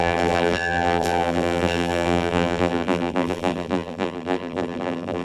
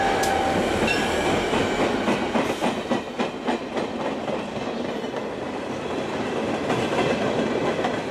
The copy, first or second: first